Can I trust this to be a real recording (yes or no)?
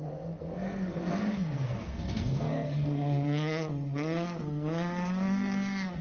no